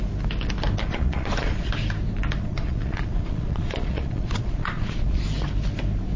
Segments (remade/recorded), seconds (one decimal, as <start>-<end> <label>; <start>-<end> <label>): 0.0-0.8 recorded; 0.8-1.7 remade; 1.7-2.5 recorded; 2.5-5.2 remade; 5.2-6.2 recorded